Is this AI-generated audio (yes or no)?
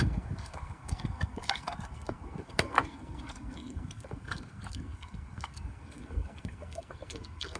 yes